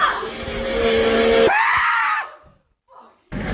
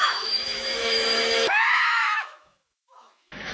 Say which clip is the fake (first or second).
second